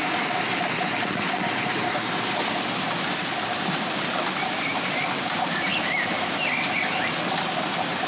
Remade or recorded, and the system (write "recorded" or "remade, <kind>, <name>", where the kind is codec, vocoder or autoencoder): recorded